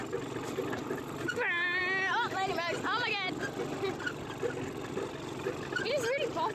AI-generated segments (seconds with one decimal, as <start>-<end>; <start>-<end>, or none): none